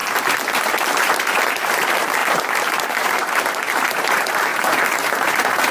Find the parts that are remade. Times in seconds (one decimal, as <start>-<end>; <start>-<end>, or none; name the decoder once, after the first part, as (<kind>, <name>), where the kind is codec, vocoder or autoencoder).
0.9-5.7 (vocoder, BigVGAN v2)